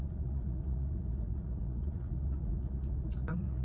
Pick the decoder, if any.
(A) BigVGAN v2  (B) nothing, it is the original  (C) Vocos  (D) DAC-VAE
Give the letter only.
C